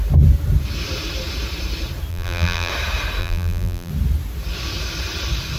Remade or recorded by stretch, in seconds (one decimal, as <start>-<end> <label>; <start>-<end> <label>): 0.0-2.1 recorded; 2.1-2.7 remade; 2.7-3.2 recorded; 3.2-3.9 remade; 3.9-5.6 recorded